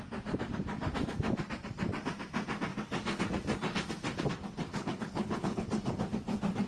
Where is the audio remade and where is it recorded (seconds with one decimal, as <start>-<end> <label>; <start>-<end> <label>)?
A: 0.0-4.7 recorded; 4.7-5.7 remade; 5.7-6.7 recorded